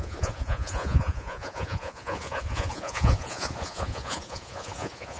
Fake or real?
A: fake